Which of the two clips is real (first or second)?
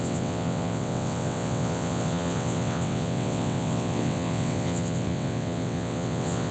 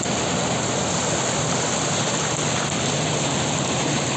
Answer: second